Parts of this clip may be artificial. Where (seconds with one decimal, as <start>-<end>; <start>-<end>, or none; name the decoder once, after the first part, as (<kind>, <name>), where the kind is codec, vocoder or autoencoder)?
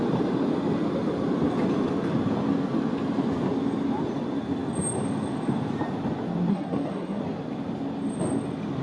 6.5-7.2 (codec, SNAC)